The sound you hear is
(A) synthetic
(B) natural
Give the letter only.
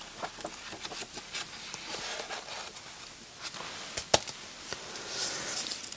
B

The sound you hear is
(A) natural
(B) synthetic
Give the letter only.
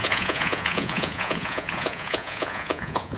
B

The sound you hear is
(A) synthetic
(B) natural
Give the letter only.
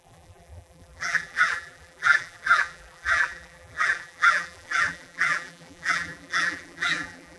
A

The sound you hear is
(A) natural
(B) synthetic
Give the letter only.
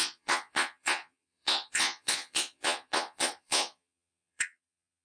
B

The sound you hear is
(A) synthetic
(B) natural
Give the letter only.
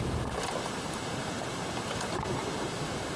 B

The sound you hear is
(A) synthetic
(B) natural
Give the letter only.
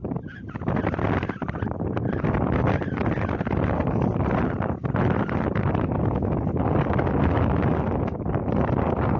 B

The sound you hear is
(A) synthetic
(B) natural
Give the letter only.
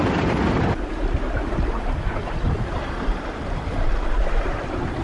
A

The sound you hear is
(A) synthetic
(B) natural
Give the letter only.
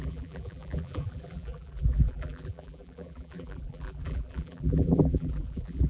A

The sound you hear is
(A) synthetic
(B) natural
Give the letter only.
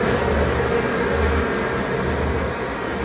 B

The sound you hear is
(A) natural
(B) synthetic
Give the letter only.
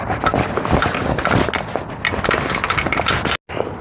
A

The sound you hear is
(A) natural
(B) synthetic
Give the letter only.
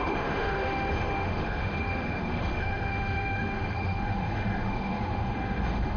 B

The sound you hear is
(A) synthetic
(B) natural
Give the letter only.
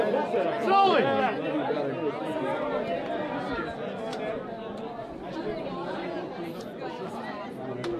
B